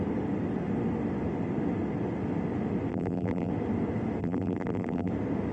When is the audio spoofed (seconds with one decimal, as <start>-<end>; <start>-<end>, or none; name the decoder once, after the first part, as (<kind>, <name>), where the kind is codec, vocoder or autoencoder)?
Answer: 2.9-3.5 (vocoder, BigVGAN v2); 4.2-5.1